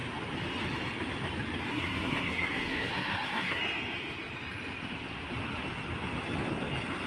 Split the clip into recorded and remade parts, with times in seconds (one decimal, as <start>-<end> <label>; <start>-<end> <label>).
0.0-1.7 recorded; 1.7-3.6 remade; 3.6-7.1 recorded